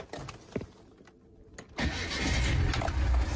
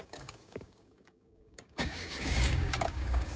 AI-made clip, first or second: second